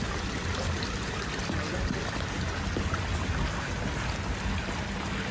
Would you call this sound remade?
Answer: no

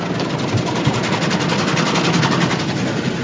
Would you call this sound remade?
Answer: no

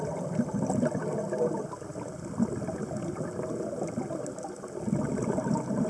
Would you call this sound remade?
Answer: no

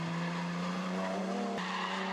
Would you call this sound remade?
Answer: no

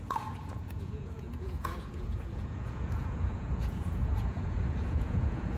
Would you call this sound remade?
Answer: yes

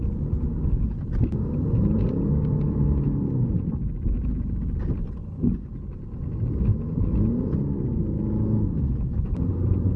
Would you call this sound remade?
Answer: no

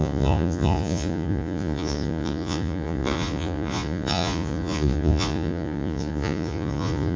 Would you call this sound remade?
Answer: yes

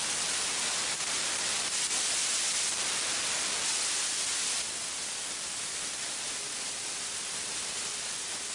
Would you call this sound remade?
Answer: no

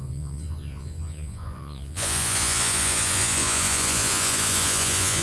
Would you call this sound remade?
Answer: yes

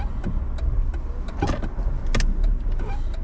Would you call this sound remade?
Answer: no